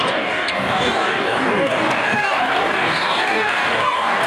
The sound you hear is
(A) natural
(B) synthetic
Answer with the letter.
B